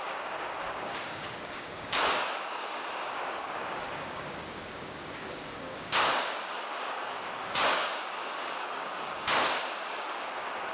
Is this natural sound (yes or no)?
no